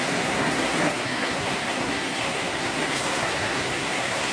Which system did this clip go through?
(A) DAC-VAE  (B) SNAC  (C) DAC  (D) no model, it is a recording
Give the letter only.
B